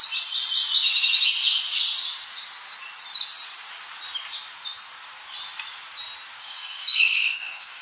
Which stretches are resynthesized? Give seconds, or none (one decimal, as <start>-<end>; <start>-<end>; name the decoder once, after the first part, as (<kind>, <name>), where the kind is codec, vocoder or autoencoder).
6.4-7.8 (codec, SNAC)